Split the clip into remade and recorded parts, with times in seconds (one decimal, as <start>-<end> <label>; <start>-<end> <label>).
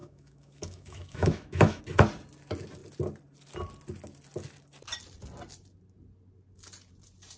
0.0-1.8 remade; 1.8-7.4 recorded